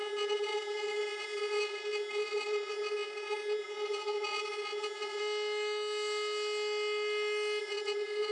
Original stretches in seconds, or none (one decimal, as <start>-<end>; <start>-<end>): 5.2-7.6